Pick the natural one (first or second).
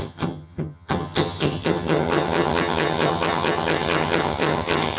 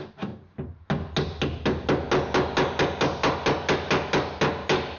second